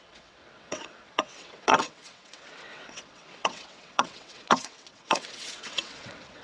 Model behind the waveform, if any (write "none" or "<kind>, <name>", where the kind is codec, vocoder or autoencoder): vocoder, WaveNeXt